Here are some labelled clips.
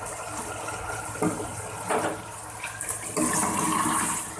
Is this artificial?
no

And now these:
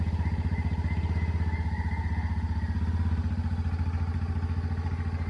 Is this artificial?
no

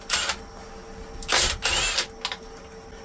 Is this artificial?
no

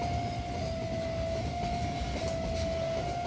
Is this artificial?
no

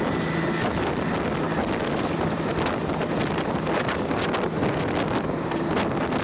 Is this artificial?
no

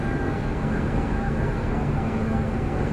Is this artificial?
yes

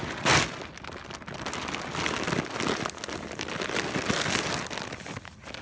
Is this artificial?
no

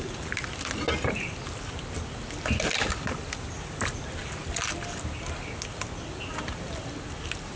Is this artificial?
no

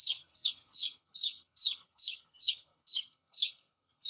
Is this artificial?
yes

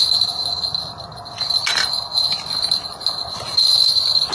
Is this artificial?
no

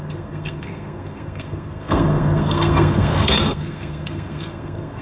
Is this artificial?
yes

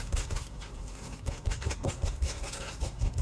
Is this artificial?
yes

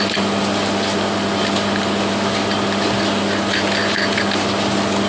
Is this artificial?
no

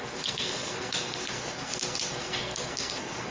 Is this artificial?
yes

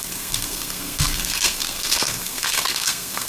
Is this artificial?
yes